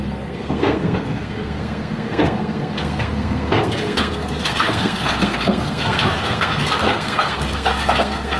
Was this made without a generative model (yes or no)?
no